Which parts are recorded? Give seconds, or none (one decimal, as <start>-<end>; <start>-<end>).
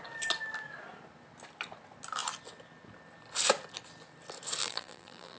0.0-4.6